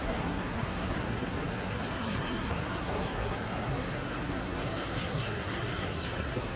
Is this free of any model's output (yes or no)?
no